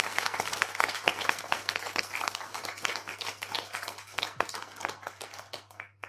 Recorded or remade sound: remade